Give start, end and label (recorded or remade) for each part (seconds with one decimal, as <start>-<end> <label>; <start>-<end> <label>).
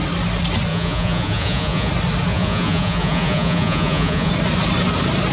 0.0-0.7 recorded; 0.7-1.9 remade; 1.9-2.3 recorded; 2.3-4.3 remade; 4.3-5.3 recorded